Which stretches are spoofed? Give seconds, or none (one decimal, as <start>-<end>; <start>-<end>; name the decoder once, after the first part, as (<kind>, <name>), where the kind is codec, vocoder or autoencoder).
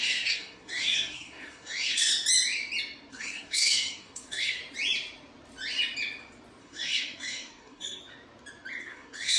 0.0-2.1 (codec, SNAC); 3.1-4.6; 6.6-8.0; 8.8-9.4